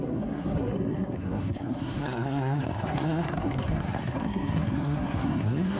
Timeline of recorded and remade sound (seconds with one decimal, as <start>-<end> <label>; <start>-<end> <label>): 0.0-5.8 remade